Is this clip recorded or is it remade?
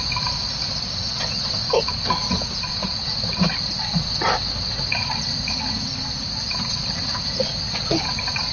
recorded